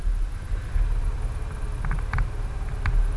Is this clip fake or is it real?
real